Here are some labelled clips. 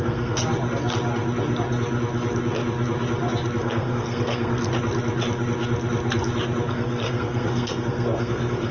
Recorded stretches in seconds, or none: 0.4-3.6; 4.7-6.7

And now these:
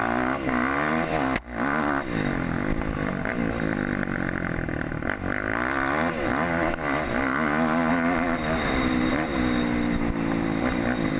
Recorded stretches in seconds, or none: 0.0-11.2

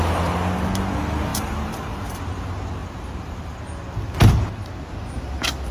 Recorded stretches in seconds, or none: 0.0-1.3; 2.2-2.8; 3.6-5.7

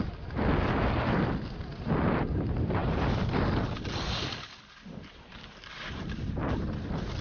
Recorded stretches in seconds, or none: 0.0-7.2

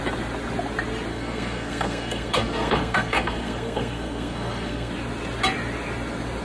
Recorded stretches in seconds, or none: 0.0-1.1; 4.9-6.4